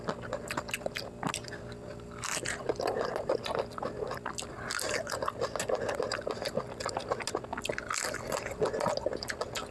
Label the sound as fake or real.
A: real